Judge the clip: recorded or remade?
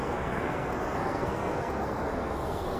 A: remade